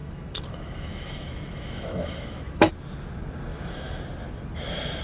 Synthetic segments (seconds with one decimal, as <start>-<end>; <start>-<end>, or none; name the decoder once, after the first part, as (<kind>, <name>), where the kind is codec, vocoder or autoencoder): 0.0-2.7 (autoencoder, DAC-VAE); 3.5-4.0